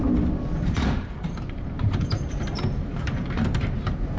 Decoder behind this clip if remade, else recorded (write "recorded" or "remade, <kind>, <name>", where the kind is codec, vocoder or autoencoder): remade, vocoder, BigVGAN v2